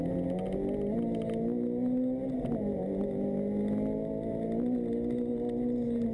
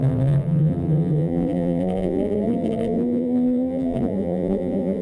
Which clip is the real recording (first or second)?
first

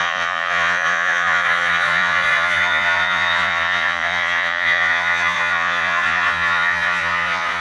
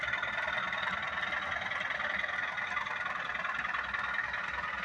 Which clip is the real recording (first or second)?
second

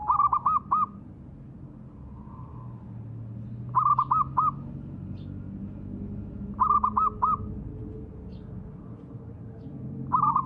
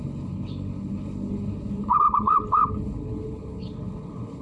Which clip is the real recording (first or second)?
first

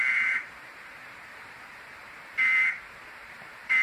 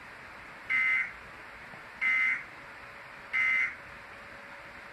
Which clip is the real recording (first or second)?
second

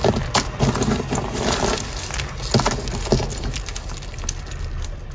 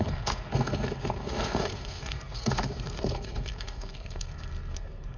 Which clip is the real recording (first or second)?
first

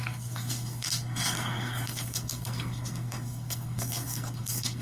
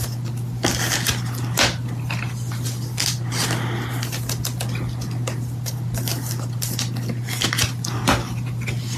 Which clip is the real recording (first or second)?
second